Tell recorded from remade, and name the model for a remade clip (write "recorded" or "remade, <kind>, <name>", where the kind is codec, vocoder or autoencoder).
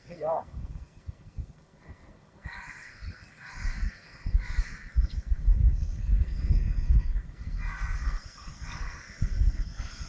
remade, codec, SNAC